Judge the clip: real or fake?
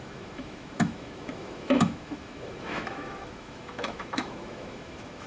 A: fake